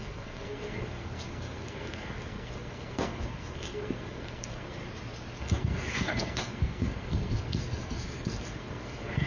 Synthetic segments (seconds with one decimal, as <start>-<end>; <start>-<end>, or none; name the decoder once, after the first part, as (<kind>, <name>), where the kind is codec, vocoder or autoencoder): 0.0-4.8 (codec, SNAC); 5.4-9.3